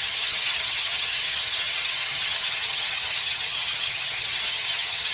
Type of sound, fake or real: fake